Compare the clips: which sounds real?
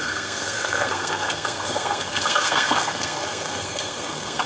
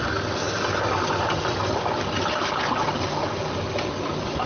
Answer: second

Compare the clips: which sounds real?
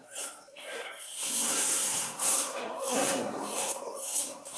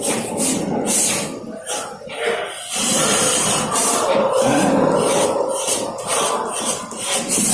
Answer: second